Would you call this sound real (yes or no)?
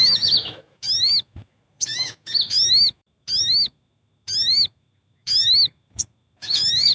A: no